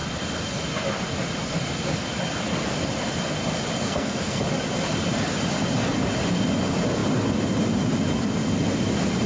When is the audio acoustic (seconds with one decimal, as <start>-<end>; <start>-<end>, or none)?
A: 0.0-3.8; 4.4-9.3